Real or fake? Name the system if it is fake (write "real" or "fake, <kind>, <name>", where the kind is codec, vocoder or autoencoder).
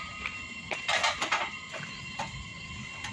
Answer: real